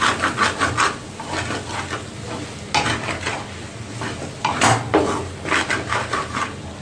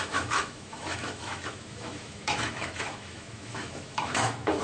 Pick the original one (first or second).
first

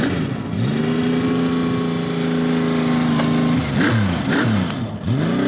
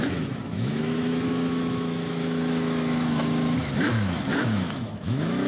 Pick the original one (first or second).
first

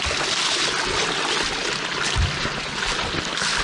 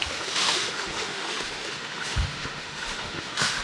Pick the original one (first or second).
first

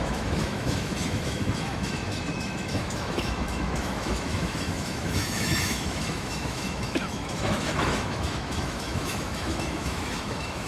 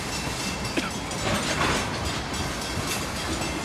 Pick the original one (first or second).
second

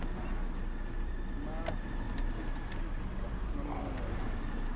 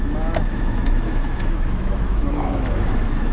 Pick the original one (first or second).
first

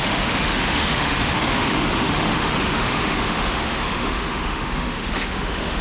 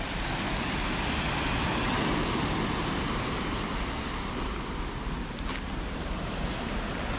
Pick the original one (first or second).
second